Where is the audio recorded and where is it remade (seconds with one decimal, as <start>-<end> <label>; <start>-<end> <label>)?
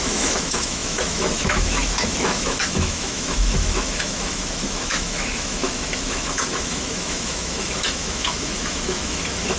0.0-9.6 remade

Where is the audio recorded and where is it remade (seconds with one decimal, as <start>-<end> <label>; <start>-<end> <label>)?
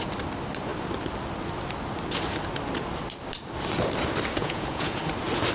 0.0-4.4 recorded; 4.4-5.0 remade; 5.0-5.5 recorded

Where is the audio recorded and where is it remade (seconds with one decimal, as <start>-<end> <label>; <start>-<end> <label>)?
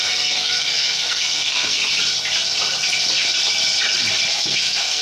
0.0-1.8 remade; 1.8-4.3 recorded; 4.3-5.0 remade